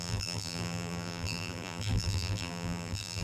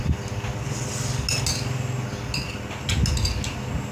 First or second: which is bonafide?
second